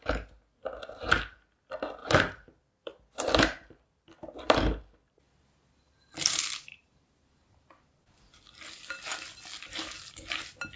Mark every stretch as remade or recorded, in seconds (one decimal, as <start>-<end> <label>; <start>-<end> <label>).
0.0-2.0 recorded; 2.0-5.3 remade; 5.3-10.8 recorded